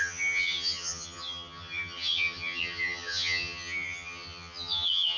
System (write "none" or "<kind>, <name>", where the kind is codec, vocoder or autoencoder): vocoder, HiFi-GAN